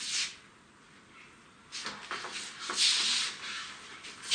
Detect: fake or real real